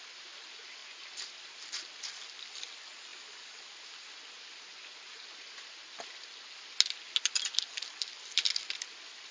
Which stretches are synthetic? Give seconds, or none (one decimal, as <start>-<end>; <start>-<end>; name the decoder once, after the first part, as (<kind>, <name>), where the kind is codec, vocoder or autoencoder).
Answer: none